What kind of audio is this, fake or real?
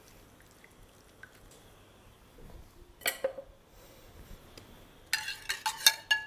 real